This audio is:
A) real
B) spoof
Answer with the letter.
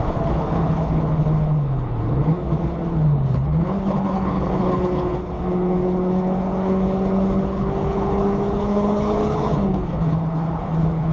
B